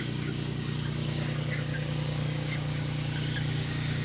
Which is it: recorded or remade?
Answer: remade